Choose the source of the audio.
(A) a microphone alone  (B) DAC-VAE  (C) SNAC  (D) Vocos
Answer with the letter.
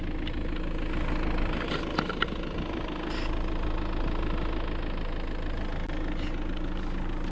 A